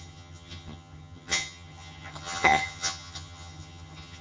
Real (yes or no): no